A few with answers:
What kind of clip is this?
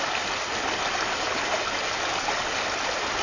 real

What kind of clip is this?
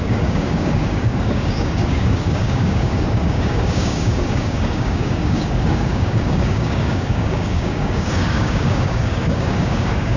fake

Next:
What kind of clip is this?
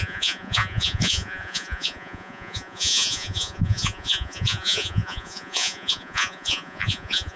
fake